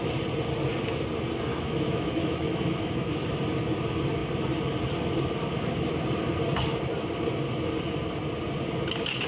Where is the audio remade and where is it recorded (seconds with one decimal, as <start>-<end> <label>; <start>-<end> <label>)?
0.0-1.5 recorded; 1.5-3.3 remade; 3.3-9.3 recorded